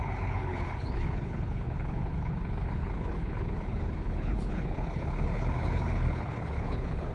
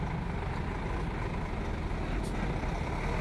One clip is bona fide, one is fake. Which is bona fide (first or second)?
second